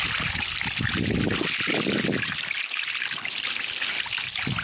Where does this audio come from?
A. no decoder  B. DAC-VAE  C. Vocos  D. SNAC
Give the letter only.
A